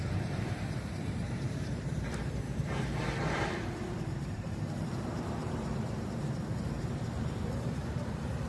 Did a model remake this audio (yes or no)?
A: yes